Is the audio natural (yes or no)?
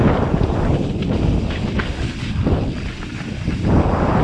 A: yes